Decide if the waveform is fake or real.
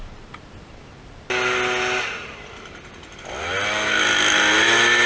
real